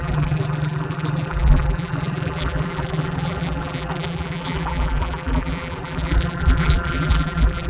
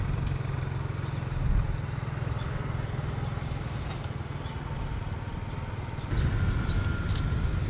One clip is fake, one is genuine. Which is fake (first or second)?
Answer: first